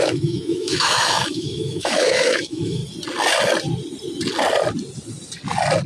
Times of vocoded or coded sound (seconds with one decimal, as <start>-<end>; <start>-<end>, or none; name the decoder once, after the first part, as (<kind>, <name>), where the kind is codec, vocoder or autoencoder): 0.0-2.8 (autoencoder, DAC-VAE)